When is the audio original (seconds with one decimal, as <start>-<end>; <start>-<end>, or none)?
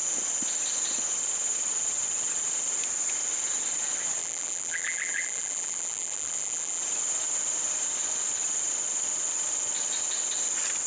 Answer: 0.0-4.2; 6.8-10.9